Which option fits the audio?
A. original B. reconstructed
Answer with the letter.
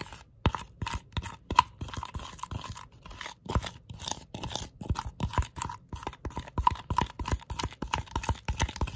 A